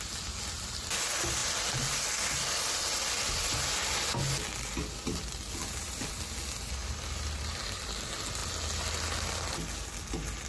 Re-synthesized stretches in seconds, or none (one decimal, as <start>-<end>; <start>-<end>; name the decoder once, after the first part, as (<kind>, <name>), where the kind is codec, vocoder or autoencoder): none